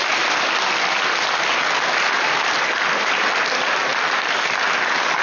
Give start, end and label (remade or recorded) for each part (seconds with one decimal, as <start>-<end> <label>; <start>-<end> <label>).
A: 0.0-5.2 recorded

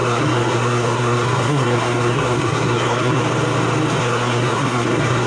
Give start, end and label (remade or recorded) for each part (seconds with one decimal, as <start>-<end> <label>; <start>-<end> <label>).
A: 0.0-3.2 remade; 3.2-4.0 recorded; 4.0-5.3 remade

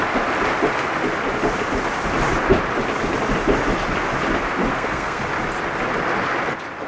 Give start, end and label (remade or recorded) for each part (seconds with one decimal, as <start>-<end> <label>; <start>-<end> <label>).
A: 0.0-4.7 recorded; 4.7-5.2 remade; 5.2-6.9 recorded